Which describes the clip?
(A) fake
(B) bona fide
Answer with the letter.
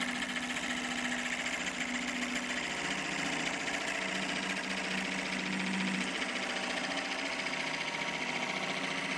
B